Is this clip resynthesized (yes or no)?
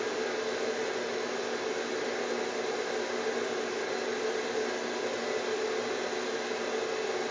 no